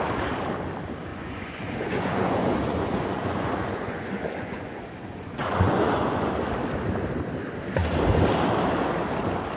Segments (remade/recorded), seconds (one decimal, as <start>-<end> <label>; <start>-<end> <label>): 0.0-1.1 recorded; 1.1-6.3 remade; 6.3-9.6 recorded